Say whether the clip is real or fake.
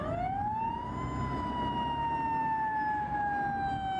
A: real